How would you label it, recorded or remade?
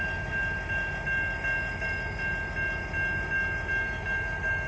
recorded